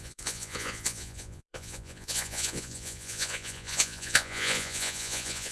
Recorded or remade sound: remade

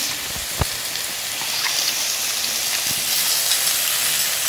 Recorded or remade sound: recorded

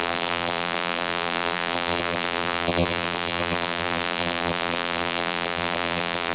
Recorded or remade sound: remade